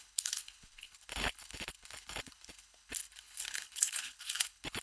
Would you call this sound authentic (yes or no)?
no